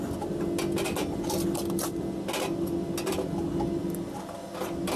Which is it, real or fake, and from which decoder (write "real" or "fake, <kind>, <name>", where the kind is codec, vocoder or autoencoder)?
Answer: real